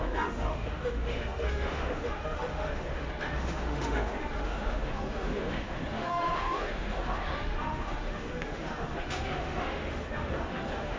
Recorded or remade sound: remade